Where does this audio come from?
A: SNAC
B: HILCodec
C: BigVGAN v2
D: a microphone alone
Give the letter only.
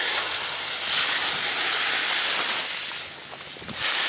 D